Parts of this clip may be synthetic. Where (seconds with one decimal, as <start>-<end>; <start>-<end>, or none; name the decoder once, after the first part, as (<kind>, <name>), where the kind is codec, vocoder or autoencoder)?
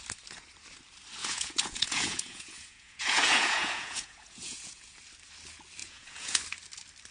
1.2-5.0 (vocoder, Vocos); 5.8-6.4